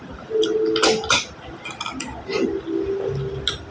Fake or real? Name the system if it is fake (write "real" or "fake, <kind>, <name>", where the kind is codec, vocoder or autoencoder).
real